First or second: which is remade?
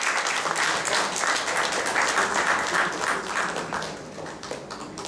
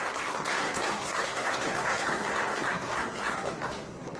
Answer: second